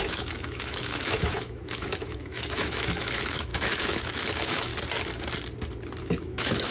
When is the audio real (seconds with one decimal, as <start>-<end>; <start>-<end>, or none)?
4.7-6.0